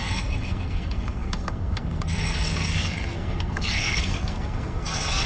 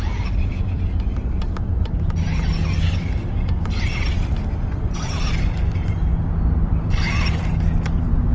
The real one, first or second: second